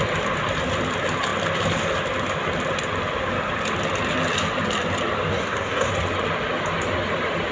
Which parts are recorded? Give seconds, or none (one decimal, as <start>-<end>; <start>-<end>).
0.0-5.3; 5.9-7.5